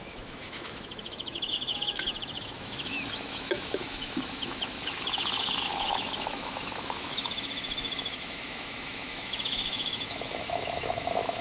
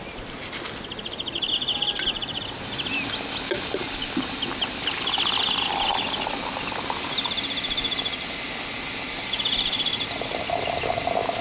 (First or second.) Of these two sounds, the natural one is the second